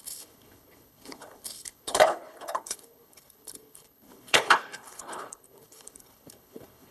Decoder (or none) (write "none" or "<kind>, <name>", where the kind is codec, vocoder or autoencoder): codec, HILCodec